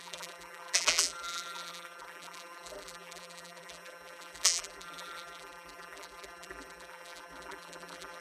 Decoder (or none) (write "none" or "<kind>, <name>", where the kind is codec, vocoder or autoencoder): vocoder, BigVGAN v2